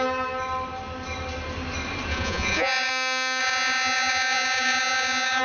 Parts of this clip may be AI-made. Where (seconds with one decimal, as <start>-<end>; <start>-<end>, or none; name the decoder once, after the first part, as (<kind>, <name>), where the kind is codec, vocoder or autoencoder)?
2.1-2.9 (vocoder, Vocos); 3.4-5.4